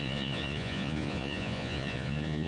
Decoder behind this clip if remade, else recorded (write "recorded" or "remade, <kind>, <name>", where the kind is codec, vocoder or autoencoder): remade, vocoder, Vocos